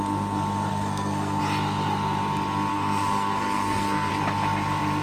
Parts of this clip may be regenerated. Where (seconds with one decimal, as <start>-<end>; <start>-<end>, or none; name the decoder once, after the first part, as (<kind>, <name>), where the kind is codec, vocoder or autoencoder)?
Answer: 0.7-1.4 (codec, SNAC); 2.7-4.1